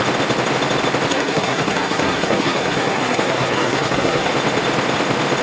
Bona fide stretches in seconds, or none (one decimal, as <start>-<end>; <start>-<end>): 0.0-1.1; 4.3-5.4